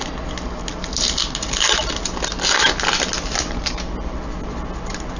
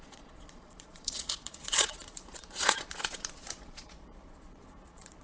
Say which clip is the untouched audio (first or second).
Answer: first